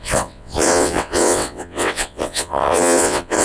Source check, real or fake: fake